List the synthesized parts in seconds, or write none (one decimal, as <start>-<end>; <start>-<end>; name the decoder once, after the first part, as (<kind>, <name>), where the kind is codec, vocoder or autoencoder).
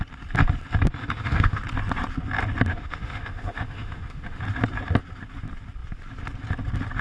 1.0-1.6 (autoencoder, DAC-VAE); 2.7-4.4